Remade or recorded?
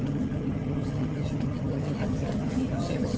remade